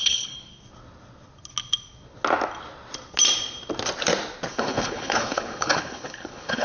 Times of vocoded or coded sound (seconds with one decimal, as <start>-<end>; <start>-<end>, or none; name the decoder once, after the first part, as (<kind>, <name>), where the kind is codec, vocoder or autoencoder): 0.0-0.5 (codec, HILCodec); 4.5-6.6